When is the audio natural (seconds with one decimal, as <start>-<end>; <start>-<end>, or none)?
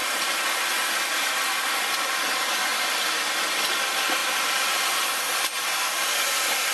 0.8-2.7; 3.7-4.2; 4.9-6.7